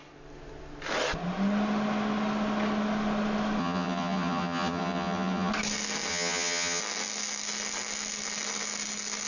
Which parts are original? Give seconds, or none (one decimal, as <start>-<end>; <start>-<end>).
0.0-3.6; 5.5-6.1; 6.8-9.3

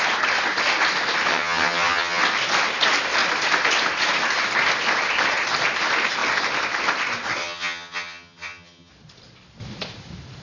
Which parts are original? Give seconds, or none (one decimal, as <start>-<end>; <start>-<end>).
0.0-1.3; 2.2-7.4; 8.9-10.4